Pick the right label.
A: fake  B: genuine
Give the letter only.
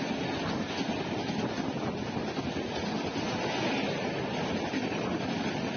B